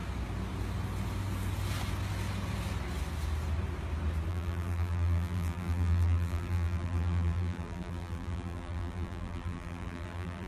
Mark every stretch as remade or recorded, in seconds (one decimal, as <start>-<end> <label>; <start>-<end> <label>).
0.0-4.3 recorded; 4.3-10.5 remade